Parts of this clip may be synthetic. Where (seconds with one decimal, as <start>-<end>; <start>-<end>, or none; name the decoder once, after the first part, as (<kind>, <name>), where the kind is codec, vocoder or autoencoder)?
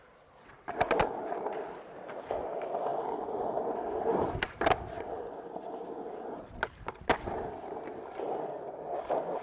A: none